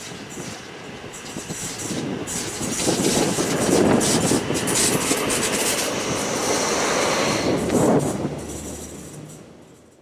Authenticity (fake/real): real